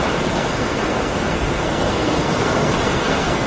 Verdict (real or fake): fake